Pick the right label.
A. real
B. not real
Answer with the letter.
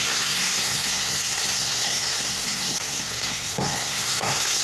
B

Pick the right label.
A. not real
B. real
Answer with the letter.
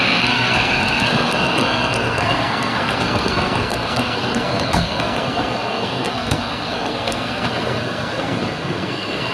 A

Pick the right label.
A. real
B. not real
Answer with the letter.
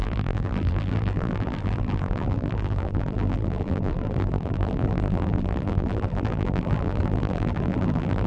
B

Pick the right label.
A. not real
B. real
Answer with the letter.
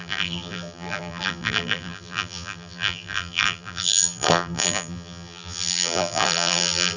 A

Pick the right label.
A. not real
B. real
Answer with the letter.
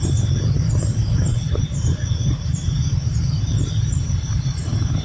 A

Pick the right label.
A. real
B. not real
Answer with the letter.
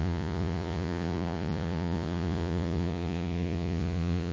B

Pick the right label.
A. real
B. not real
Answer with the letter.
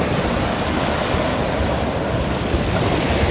A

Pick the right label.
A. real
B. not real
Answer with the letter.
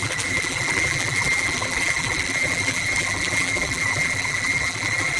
B